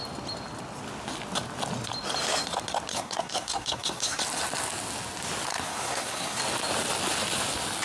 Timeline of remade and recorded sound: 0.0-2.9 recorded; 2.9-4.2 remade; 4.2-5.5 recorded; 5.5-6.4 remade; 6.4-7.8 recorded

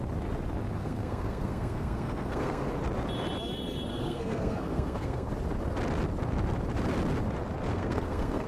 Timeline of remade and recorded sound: 0.0-0.8 recorded; 0.8-2.7 remade; 2.7-3.9 recorded; 3.9-5.3 remade; 5.3-7.7 recorded; 7.7-8.5 remade